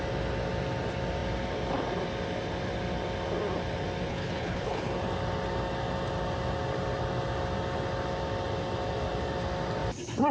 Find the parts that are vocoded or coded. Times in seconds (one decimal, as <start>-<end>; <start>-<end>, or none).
4.1-4.9